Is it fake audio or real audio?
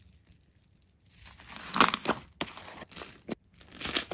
real